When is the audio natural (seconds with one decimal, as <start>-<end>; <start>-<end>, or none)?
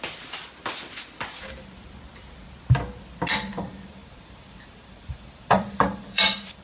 0.0-3.5